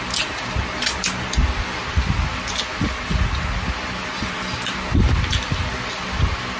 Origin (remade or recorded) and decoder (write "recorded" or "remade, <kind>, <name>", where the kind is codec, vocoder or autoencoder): recorded